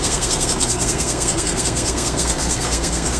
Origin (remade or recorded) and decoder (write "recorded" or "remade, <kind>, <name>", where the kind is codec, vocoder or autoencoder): remade, codec, SNAC